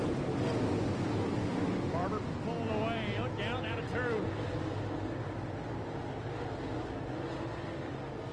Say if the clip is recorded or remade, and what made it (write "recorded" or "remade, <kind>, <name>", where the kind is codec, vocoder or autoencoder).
recorded